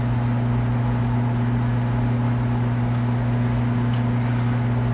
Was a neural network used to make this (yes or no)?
no